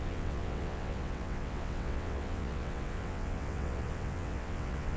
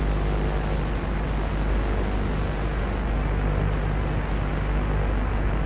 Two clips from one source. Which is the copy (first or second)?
first